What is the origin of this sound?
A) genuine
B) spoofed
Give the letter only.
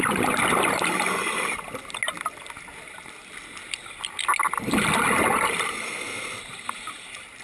A